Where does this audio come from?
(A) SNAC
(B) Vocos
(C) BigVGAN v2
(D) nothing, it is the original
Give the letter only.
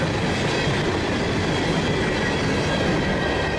D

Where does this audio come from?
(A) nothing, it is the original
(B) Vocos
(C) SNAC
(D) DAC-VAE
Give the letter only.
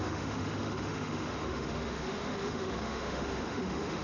D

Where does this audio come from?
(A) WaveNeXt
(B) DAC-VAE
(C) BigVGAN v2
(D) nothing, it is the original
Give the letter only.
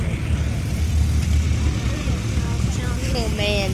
D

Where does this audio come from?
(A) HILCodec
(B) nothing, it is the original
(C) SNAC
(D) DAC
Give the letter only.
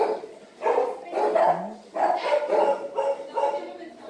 B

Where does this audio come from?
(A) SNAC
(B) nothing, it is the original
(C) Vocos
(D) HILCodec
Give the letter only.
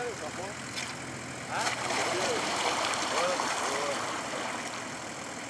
B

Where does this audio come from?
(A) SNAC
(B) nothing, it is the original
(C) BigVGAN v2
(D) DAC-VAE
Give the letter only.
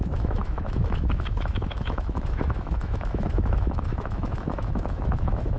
D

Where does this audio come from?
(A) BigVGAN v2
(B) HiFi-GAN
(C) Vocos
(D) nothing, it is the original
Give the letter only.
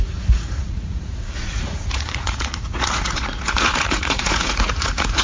C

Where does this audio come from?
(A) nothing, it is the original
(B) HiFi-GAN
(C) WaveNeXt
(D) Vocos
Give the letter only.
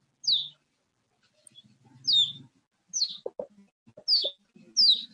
A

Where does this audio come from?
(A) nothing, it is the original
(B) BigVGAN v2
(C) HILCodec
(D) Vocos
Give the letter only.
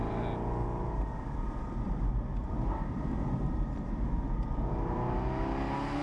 A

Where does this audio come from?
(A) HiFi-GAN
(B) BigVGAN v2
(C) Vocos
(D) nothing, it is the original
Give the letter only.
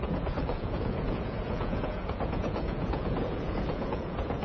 C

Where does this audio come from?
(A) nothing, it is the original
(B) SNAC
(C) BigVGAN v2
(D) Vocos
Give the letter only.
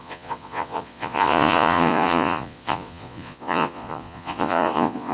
D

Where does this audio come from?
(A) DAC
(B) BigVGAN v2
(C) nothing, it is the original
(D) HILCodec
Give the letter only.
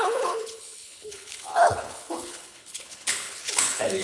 D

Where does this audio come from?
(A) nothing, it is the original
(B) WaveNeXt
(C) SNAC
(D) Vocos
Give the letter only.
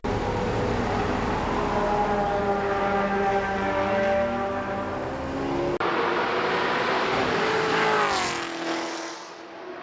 A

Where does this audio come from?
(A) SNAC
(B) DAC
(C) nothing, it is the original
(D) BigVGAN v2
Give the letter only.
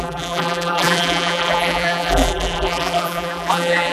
D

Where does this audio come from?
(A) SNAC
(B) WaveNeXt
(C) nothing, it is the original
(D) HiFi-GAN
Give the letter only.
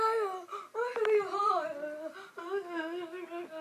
C